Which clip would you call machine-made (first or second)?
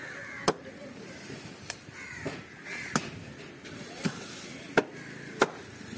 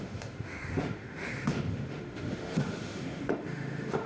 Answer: second